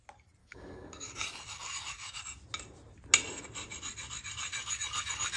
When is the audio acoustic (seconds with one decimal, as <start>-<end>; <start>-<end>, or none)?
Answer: 0.0-0.4; 2.2-4.5